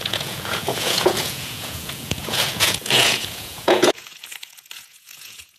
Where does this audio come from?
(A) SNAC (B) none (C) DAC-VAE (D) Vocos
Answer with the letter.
D